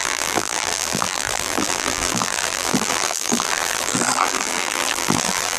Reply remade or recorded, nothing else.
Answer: remade